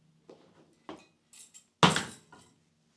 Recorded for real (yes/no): yes